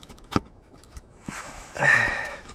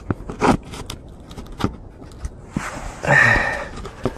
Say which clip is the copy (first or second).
first